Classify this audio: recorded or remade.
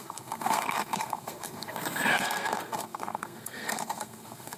remade